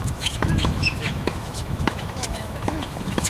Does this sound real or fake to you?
fake